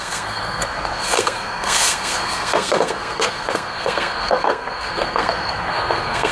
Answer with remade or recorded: remade